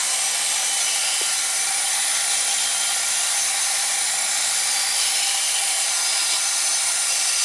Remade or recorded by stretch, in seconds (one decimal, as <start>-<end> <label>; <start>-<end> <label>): 0.0-7.4 remade